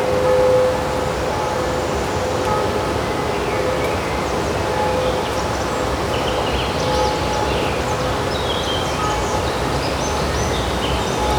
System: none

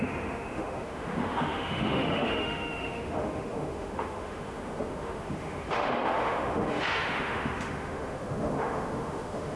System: autoencoder, DAC-VAE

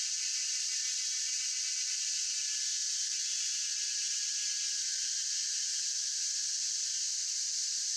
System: none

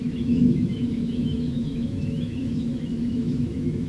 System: autoencoder, DAC-VAE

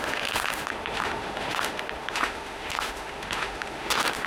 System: autoencoder, DAC-VAE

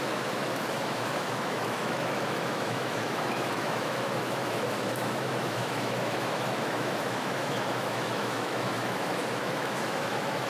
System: autoencoder, DAC-VAE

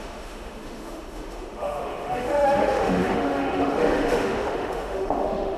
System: autoencoder, DAC-VAE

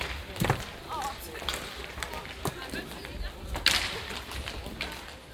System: none